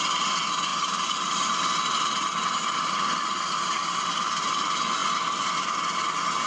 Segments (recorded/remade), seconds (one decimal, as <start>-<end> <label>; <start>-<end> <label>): 0.0-6.5 recorded